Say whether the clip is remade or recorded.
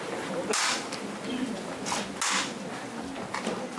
recorded